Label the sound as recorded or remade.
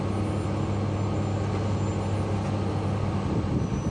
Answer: recorded